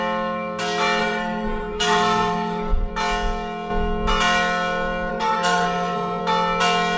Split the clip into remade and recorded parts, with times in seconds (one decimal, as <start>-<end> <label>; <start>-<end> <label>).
0.0-1.0 recorded; 1.0-2.9 remade; 2.9-5.1 recorded; 5.1-6.2 remade; 6.2-7.0 recorded